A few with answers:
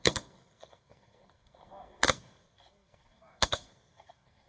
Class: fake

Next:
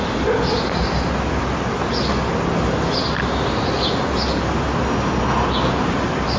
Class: real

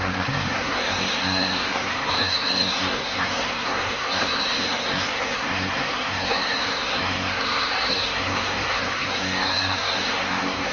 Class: fake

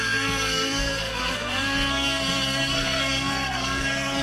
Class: fake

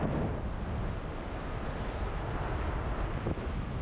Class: real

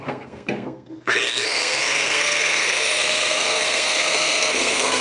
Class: fake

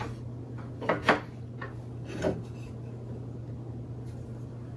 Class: real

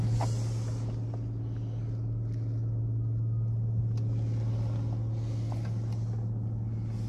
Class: real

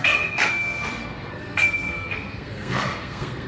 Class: fake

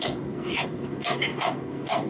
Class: fake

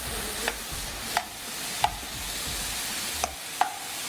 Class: real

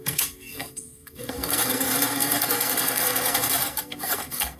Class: fake